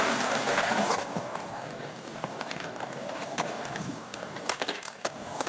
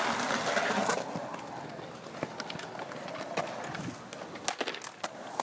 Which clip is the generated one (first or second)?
first